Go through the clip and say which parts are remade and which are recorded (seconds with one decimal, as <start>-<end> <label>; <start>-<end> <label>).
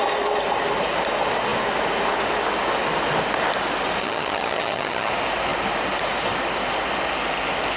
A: 0.0-4.0 recorded; 4.0-5.1 remade; 5.1-7.8 recorded